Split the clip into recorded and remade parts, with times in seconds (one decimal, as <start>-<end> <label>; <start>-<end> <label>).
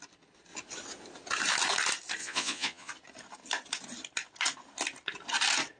0.0-2.2 recorded; 2.2-2.9 remade; 2.9-5.8 recorded